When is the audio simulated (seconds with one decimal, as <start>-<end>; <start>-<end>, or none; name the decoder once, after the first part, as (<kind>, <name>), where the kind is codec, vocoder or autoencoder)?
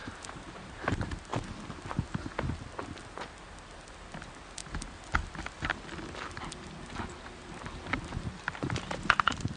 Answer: 0.0-0.7 (vocoder, BigVGAN v2)